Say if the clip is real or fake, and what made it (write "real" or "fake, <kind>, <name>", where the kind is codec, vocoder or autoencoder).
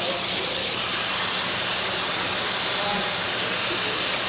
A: real